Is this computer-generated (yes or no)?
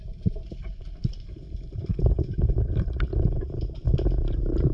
no